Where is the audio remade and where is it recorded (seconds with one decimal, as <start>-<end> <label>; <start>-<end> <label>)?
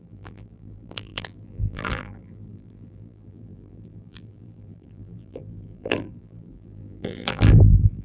0.0-8.0 remade